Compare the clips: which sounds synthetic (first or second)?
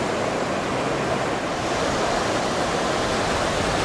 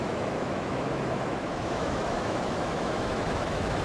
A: second